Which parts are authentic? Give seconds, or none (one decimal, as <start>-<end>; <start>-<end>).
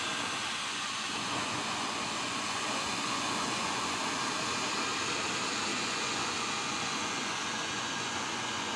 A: 0.0-0.6; 4.2-5.7